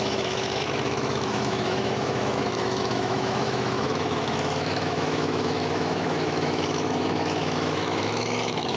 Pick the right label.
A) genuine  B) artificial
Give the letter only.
B